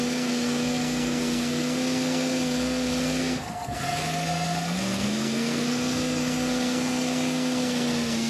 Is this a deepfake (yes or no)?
yes